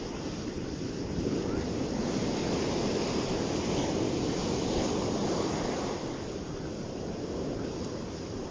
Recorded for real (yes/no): yes